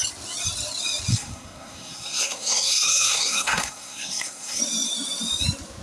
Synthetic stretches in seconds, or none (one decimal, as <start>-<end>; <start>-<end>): 1.1-4.6